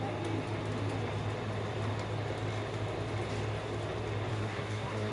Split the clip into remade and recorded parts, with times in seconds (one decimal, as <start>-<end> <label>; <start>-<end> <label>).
0.0-4.3 recorded; 4.3-5.1 remade